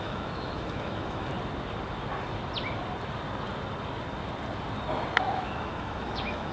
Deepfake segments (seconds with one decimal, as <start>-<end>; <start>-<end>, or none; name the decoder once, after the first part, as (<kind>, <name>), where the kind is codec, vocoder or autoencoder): 0.0-1.3 (autoencoder, DAC-VAE); 5.2-6.5